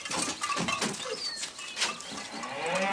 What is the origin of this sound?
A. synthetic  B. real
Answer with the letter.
A